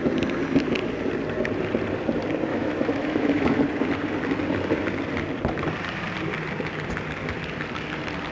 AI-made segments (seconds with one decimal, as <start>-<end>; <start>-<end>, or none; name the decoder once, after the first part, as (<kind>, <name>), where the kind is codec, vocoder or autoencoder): 2.5-3.6 (autoencoder, DAC-VAE)

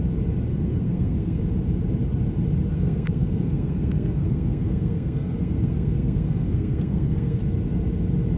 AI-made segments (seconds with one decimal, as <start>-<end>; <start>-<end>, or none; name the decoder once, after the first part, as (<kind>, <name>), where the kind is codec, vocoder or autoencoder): 0.5-1.4 (codec, SNAC); 2.7-7.4

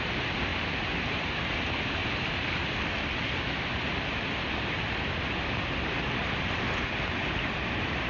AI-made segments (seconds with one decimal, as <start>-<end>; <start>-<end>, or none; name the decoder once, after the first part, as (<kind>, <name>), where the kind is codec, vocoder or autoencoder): 2.0-2.6 (vocoder, BigVGAN v2); 6.2-8.1

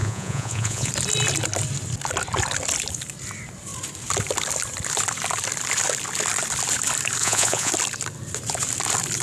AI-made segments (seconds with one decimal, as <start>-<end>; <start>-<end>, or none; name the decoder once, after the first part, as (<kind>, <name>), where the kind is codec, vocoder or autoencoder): 0.0-0.9 (vocoder, Vocos); 7.2-7.7

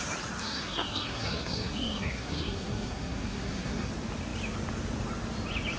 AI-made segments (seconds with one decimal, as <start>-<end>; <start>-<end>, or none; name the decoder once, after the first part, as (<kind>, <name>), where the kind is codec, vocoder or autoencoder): 0.4-3.9 (codec, SNAC)